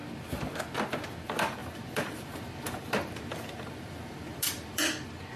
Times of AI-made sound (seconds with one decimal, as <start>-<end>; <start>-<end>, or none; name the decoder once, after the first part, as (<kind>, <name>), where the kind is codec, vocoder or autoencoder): 1.6-4.8 (vocoder, BigVGAN v2)